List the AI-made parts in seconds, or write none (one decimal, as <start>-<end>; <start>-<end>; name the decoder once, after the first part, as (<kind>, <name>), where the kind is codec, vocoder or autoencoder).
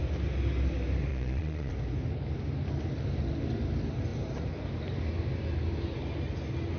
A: 1.1-1.7 (vocoder, Vocos)